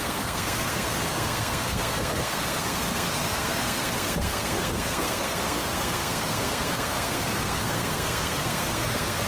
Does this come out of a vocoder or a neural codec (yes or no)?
yes